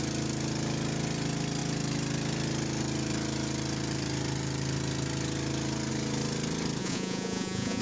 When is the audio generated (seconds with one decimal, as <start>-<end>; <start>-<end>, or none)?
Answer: 6.8-7.8